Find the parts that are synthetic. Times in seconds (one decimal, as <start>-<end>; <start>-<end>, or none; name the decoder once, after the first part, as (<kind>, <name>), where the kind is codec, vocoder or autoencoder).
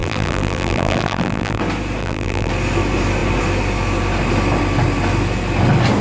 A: 0.0-1.6 (vocoder, BigVGAN v2); 2.0-2.5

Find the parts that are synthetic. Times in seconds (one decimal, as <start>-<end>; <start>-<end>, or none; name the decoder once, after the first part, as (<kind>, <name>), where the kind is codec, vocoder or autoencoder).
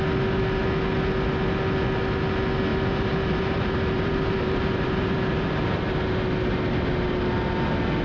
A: 2.7-5.8 (vocoder, BigVGAN v2)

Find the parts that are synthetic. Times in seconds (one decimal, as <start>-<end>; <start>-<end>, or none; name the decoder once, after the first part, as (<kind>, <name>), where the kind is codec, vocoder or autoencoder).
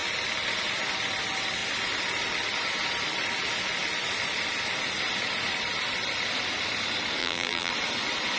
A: 7.2-7.7 (vocoder, BigVGAN v2)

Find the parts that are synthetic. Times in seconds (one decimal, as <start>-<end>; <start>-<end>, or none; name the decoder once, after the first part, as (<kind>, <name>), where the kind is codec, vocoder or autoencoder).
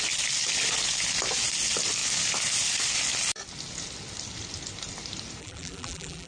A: 5.4-6.3 (vocoder, BigVGAN v2)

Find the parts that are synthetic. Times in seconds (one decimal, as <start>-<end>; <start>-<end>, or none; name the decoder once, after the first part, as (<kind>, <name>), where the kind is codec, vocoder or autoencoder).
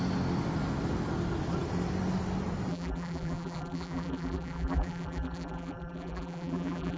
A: 2.7-7.0 (vocoder, BigVGAN v2)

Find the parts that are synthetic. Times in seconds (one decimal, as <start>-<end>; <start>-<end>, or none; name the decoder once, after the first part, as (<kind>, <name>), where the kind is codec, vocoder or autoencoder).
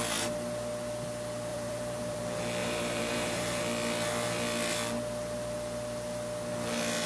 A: 1.5-2.2 (vocoder, BigVGAN v2); 2.6-3.6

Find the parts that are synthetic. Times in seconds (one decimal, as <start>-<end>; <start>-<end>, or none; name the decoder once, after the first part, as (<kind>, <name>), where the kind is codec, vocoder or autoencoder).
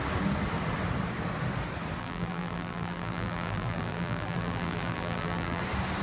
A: 2.0-5.6 (vocoder, BigVGAN v2)